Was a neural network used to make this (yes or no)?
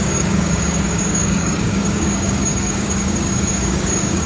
yes